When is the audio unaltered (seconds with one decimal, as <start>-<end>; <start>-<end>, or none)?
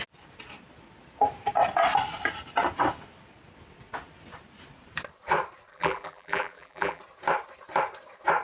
0.0-5.7; 7.0-8.4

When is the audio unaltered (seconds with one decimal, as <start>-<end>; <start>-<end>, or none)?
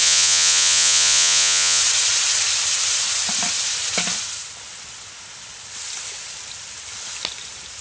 1.8-7.8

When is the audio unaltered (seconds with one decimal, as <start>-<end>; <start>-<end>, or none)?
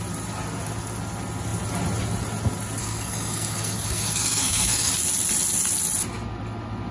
0.0-2.8; 4.9-6.9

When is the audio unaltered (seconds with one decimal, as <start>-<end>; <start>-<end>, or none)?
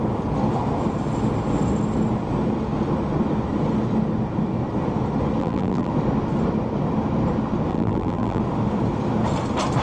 0.0-5.4; 5.9-7.7; 8.4-9.8